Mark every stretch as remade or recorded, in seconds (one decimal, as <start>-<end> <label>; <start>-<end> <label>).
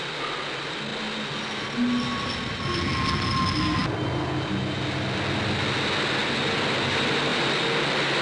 0.0-8.2 recorded